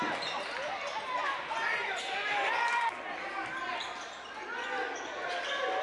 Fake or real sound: real